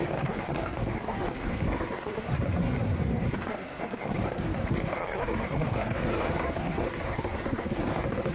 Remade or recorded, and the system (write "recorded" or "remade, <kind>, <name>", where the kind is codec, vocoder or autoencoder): remade, codec, SNAC